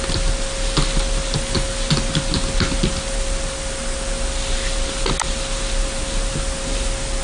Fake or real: real